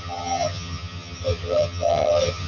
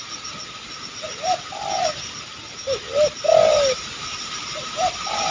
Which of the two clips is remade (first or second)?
first